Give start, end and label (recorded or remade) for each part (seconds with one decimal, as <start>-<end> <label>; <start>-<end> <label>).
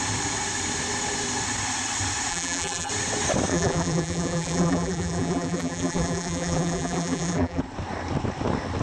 0.0-2.3 recorded; 2.3-2.9 remade; 2.9-3.5 recorded; 3.5-7.6 remade; 7.6-8.8 recorded